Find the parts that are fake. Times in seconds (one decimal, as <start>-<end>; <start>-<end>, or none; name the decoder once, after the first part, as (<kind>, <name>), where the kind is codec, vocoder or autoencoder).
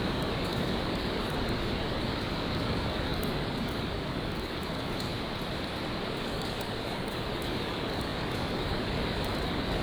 0.0-5.1 (codec, DAC); 6.2-9.8